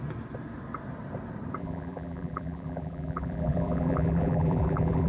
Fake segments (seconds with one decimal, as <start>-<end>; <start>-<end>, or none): 1.6-5.1